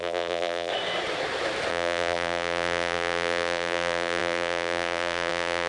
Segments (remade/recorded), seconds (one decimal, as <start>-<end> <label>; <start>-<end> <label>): 0.0-0.7 remade; 0.7-1.7 recorded; 1.7-5.7 remade